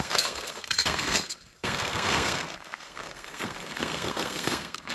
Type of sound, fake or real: fake